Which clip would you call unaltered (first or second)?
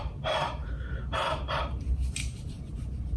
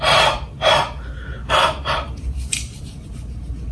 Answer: second